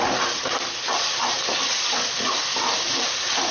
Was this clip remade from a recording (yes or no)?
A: no